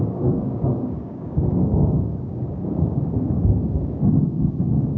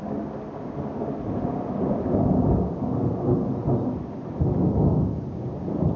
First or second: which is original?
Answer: second